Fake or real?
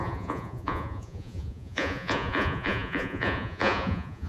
fake